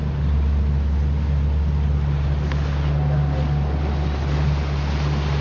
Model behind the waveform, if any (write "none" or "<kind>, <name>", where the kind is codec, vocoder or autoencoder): none